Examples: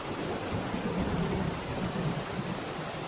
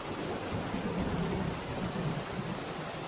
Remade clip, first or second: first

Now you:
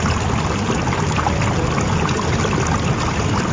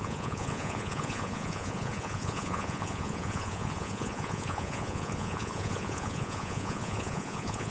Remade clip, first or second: second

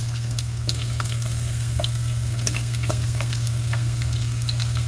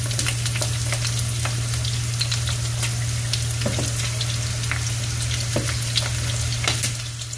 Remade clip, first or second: first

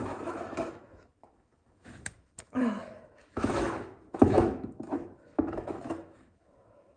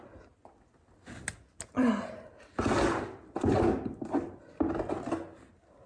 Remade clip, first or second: first